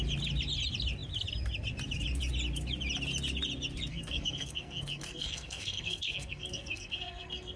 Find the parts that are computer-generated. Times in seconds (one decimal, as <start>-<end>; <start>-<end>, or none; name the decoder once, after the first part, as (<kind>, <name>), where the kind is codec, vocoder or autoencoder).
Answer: 3.9-7.6 (codec, SNAC)